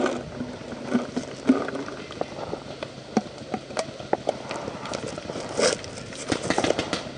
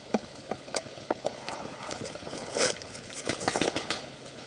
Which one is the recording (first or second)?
first